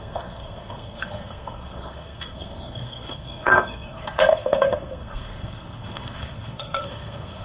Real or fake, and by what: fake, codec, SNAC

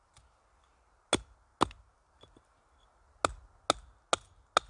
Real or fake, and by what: real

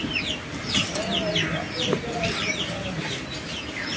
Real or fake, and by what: real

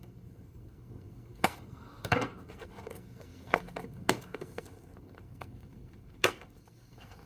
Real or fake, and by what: fake, codec, SNAC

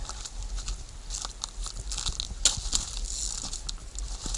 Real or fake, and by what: real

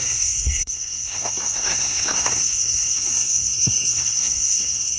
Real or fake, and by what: fake, codec, SNAC